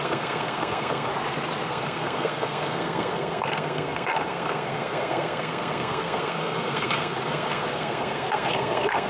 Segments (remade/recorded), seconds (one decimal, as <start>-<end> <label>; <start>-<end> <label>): 0.0-1.1 remade; 1.1-1.7 recorded; 1.7-9.1 remade